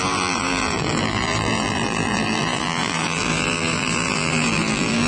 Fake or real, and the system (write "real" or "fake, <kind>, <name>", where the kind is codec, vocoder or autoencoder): fake, vocoder, BigVGAN v2